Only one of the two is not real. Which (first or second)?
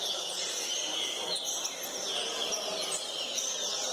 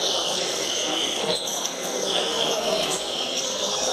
second